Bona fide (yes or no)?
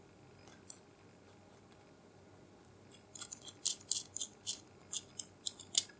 yes